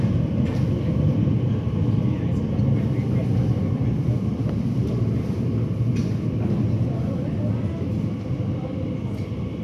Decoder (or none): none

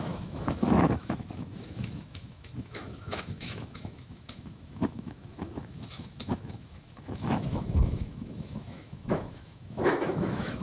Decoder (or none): autoencoder, DAC-VAE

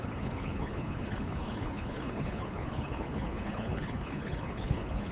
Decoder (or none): codec, HILCodec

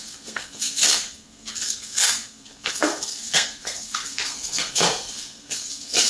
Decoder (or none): codec, SNAC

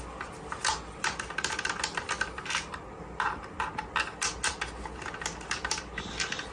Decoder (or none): none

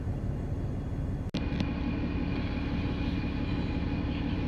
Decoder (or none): none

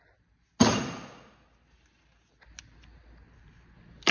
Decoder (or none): none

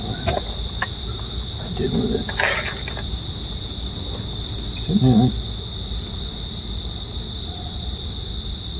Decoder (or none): none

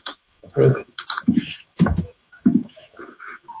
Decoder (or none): autoencoder, DAC-VAE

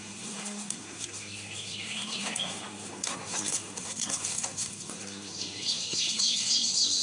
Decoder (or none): codec, SNAC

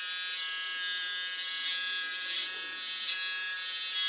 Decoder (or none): none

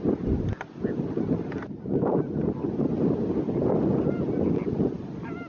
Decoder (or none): none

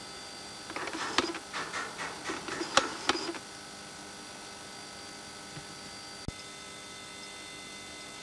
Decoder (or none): none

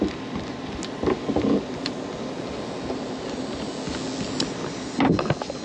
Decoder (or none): none